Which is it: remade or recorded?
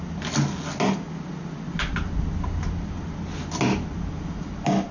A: recorded